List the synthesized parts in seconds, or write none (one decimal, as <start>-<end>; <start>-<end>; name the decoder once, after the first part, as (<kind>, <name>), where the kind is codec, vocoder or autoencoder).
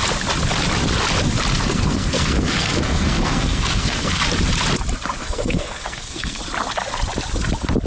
1.5-4.2 (codec, SNAC); 5.2-6.4